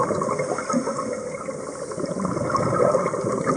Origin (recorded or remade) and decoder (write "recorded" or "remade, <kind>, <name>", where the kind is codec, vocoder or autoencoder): recorded